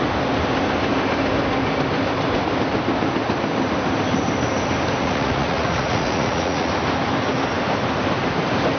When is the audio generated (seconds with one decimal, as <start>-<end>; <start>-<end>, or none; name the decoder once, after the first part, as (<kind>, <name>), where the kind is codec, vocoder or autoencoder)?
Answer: 5.0-6.7 (vocoder, Vocos)